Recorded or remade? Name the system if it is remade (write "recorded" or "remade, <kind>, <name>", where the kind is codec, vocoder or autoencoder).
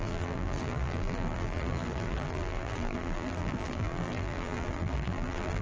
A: remade, vocoder, BigVGAN v2